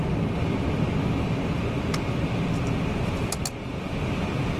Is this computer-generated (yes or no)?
no